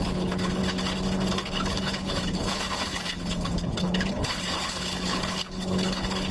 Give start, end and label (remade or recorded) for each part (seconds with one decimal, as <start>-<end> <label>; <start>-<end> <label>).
0.0-0.6 remade; 0.6-1.3 recorded; 1.3-6.3 remade